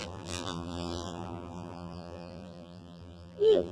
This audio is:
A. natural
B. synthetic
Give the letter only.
B